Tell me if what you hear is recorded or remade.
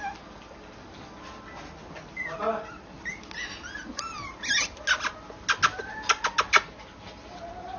recorded